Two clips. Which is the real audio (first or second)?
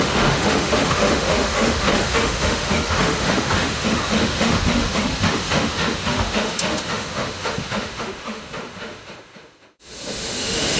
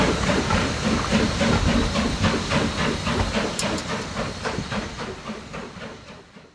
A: second